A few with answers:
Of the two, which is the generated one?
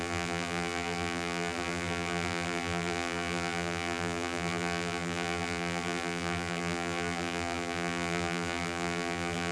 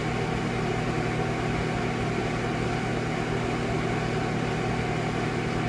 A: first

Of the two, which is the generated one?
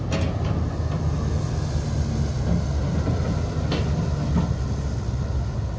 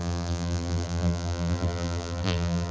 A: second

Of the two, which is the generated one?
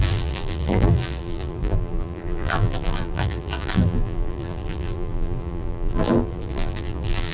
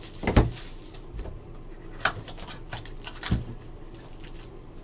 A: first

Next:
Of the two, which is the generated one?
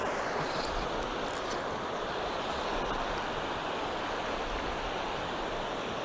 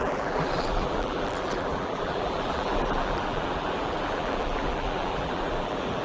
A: second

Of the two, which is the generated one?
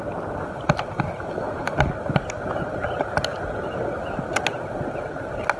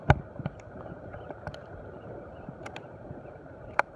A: second